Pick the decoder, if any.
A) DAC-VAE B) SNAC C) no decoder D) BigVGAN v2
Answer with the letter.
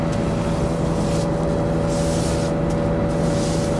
C